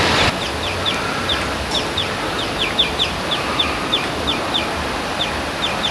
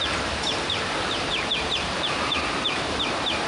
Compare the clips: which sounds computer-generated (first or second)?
second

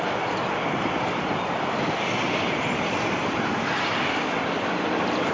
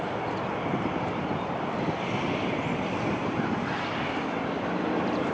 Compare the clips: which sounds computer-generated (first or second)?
first